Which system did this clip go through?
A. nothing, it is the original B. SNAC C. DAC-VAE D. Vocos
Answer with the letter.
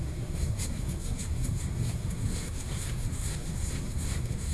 B